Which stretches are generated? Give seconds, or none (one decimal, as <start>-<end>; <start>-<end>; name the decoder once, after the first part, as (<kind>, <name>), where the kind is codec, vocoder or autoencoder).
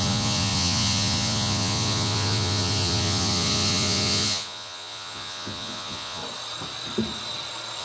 0.0-6.2 (vocoder, Vocos)